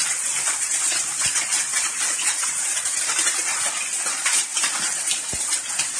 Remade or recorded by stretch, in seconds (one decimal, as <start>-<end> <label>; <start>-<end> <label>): 0.0-3.6 remade; 3.6-4.5 recorded; 4.5-5.6 remade; 5.6-6.0 recorded